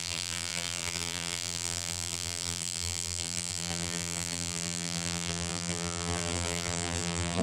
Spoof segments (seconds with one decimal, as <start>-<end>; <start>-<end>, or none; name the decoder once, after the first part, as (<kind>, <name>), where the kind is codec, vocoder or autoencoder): 0.0-7.4 (vocoder, BigVGAN v2)